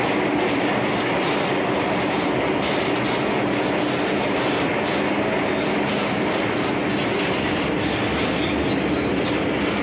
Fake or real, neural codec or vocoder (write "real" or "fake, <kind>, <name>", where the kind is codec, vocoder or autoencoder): real